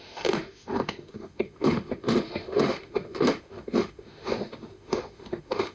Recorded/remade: remade